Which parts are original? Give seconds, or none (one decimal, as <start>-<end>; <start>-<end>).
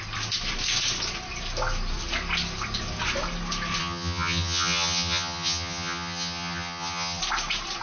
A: 0.0-3.8; 7.2-7.8